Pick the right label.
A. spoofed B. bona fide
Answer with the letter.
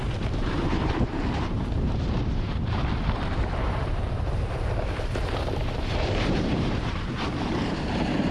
A